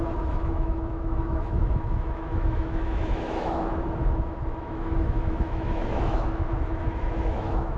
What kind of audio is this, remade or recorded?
remade